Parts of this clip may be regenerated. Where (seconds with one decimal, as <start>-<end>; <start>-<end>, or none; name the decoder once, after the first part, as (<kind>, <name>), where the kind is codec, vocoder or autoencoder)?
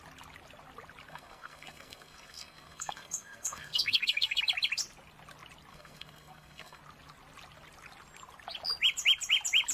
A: 1.1-4.4 (codec, SNAC); 5.7-6.8